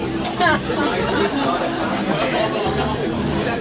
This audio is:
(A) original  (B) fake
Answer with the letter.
A